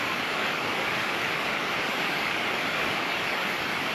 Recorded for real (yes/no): no